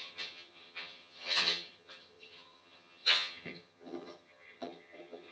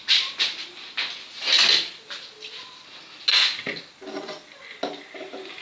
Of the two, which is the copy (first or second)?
first